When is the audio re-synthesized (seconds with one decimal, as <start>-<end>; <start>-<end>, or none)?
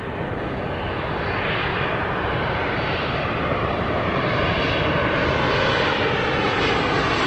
1.7-6.1